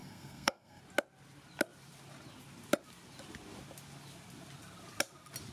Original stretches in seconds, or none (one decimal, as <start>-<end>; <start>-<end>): 0.8-5.5